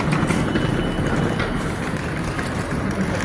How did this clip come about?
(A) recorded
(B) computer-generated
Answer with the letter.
B